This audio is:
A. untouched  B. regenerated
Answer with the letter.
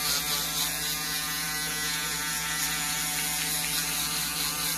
A